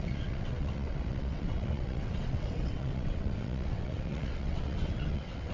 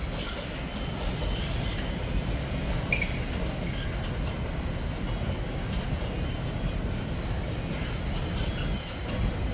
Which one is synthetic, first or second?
first